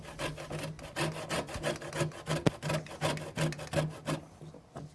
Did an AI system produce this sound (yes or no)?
no